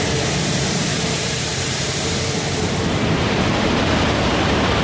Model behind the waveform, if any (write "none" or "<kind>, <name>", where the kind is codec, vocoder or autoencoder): vocoder, BigVGAN v2